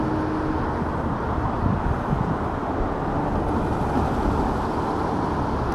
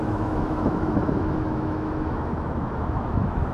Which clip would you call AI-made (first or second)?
second